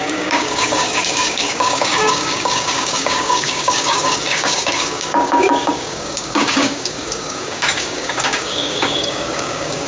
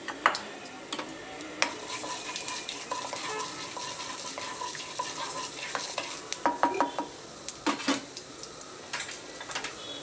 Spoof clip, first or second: first